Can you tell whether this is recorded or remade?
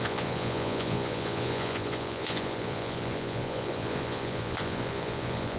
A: remade